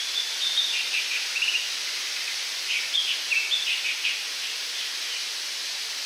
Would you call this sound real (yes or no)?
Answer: yes